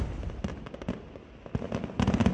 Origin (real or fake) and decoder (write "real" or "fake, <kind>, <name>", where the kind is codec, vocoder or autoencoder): real